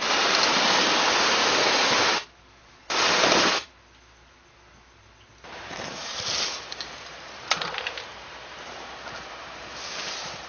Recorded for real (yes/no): yes